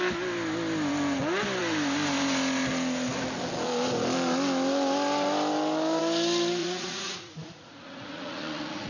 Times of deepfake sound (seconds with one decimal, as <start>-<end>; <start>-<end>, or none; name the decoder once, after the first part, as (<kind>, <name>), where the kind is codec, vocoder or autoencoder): 6.6-8.9 (vocoder, Vocos)